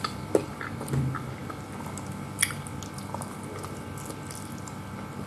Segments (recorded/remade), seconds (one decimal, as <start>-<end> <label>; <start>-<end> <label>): 0.0-5.3 recorded